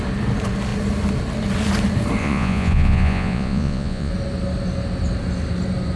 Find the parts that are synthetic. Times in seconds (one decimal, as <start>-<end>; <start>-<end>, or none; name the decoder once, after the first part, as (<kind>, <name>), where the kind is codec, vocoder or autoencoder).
2.2-4.1 (vocoder, Vocos)